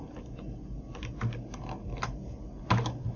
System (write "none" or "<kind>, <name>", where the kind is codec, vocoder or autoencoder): none